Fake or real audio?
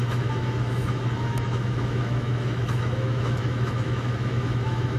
fake